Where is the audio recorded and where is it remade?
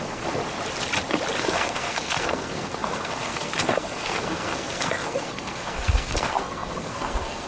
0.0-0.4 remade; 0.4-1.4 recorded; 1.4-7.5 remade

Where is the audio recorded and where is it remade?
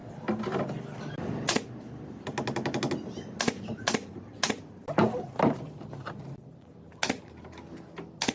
0.0-8.3 recorded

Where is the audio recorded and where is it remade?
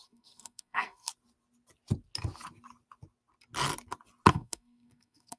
0.0-1.1 remade; 1.1-4.3 recorded; 4.3-5.4 remade